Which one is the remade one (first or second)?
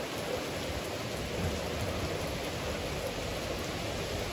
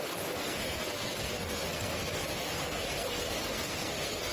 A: second